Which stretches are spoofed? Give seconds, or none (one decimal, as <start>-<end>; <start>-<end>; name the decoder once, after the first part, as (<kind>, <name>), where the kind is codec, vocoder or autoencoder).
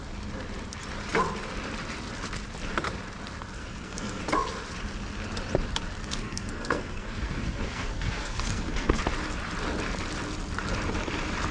3.6-4.2 (codec, SNAC); 6.0-9.0